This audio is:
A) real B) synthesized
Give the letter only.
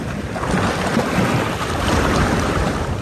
A